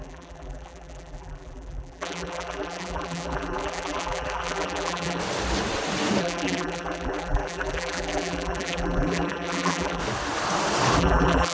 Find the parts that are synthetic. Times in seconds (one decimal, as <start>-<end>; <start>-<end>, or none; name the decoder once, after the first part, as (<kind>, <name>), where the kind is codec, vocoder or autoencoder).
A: 0.0-5.2 (vocoder, BigVGAN v2); 6.2-10.0; 11.0-11.5